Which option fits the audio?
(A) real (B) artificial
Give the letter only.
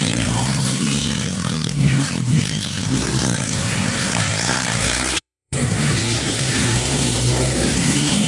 B